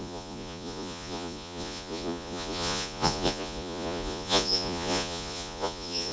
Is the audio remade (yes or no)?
yes